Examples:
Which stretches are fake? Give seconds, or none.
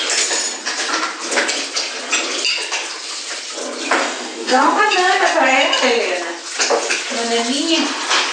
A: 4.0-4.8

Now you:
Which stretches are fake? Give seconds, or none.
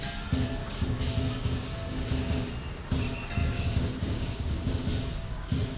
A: 0.6-2.5; 3.4-5.8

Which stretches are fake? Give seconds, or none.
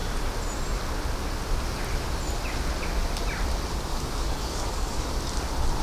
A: 3.9-5.2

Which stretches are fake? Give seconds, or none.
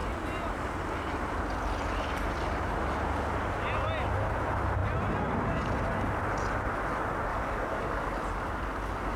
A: 7.3-8.0